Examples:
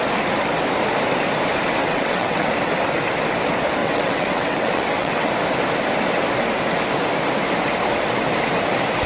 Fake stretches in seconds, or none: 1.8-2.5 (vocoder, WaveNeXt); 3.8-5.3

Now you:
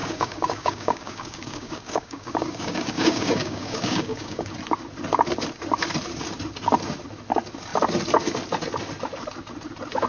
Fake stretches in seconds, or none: 0.0-4.5 (codec, DAC)

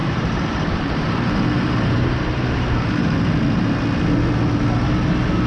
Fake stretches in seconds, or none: 0.0-3.3 (vocoder, BigVGAN v2)

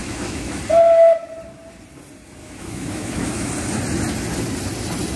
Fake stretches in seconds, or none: 0.0-0.6 (autoencoder, DAC-VAE); 2.4-3.5

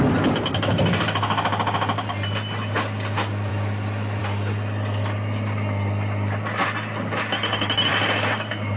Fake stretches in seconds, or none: none

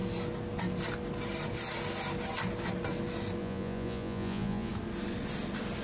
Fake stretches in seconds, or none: 3.4-4.7 (vocoder, Vocos)

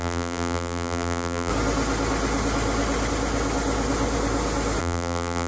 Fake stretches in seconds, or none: 0.0-1.5 (vocoder, BigVGAN v2); 4.8-5.5